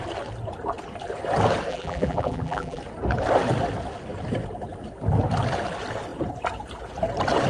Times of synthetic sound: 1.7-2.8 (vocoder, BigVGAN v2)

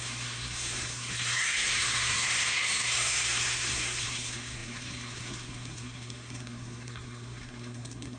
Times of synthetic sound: 0.0-8.2 (codec, SNAC)

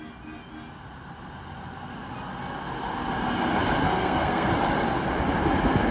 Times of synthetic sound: 3.8-4.5 (codec, SNAC)

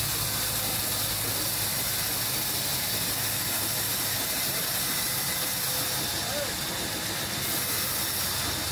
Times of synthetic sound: none

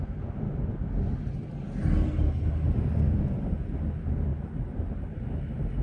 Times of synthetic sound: 4.3-4.8 (vocoder, BigVGAN v2)

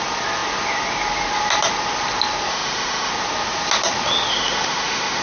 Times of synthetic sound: 2.5-3.1 (autoencoder, DAC-VAE); 4.3-5.2

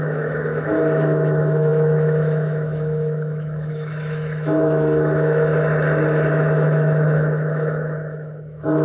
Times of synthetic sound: 0.0-5.5 (autoencoder, DAC-VAE); 6.3-8.8

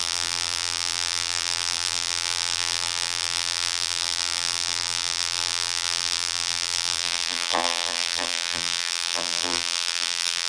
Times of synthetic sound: 0.0-10.5 (vocoder, BigVGAN v2)